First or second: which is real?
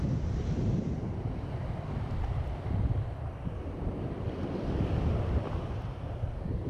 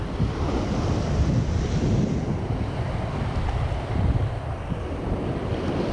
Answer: second